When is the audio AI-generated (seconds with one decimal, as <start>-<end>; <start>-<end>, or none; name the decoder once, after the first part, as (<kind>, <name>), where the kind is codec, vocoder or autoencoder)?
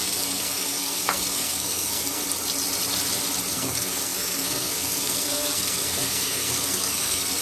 0.0-2.2 (codec, SNAC); 3.5-7.4